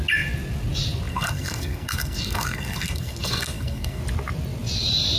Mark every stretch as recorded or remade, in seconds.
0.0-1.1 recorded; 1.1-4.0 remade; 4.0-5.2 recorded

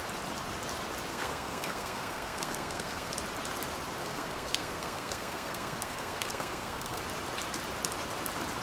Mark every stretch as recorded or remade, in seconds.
0.0-1.1 recorded; 1.1-3.1 remade; 3.1-4.0 recorded; 4.0-7.0 remade; 7.0-8.6 recorded

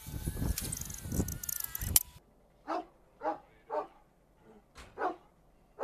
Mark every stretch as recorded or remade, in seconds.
0.0-5.8 recorded

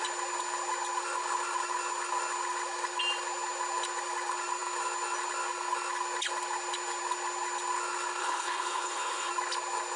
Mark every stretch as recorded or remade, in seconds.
0.0-8.2 recorded; 8.2-9.3 remade; 9.3-10.0 recorded

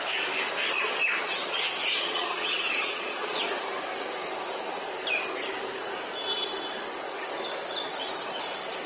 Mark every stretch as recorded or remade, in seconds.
0.0-1.2 recorded; 1.2-3.4 remade; 3.4-8.9 recorded

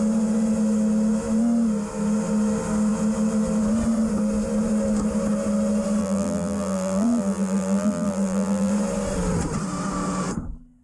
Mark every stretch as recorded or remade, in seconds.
0.0-6.0 recorded; 6.0-8.7 remade; 8.7-10.8 recorded

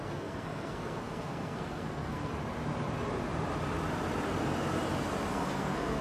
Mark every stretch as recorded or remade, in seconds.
0.0-2.3 remade; 2.3-5.3 recorded; 5.3-6.0 remade

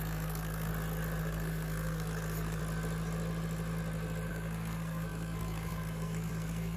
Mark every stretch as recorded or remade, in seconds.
0.0-0.7 remade; 0.7-1.2 recorded; 1.2-2.6 remade; 2.6-4.3 recorded; 4.3-6.8 remade